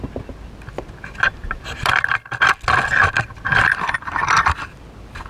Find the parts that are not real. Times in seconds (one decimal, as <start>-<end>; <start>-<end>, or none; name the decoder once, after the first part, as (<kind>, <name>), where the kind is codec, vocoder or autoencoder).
1.4-2.4 (vocoder, BigVGAN v2); 3.0-4.8